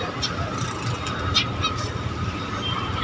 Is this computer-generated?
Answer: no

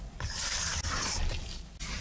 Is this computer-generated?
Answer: no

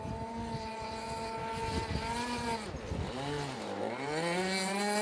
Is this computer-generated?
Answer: no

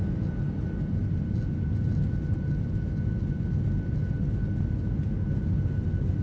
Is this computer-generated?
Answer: no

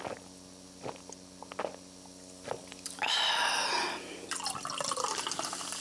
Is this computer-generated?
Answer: no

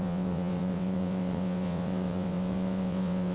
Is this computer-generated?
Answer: yes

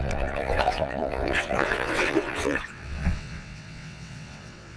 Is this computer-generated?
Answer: yes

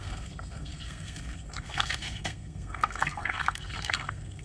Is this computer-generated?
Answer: yes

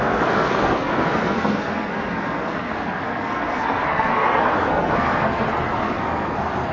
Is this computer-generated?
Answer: yes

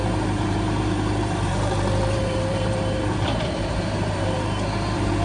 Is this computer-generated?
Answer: yes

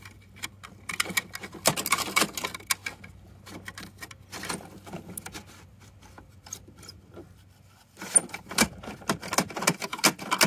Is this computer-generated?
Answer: no